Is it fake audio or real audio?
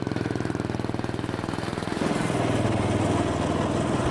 real